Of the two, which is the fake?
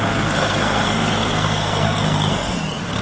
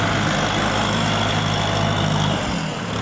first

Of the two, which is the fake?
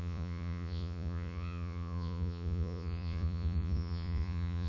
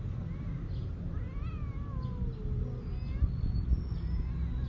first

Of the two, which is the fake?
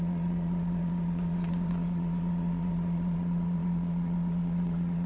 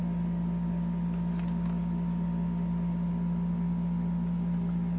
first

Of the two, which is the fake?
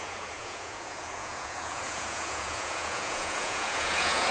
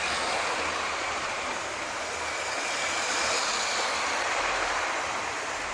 first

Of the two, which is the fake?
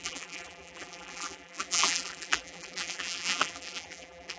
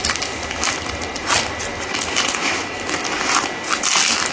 first